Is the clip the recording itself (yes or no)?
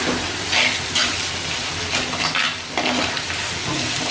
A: yes